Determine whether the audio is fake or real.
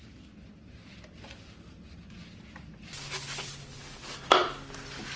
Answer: real